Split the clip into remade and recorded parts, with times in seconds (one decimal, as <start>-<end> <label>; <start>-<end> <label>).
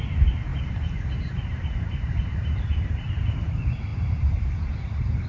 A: 0.0-5.3 remade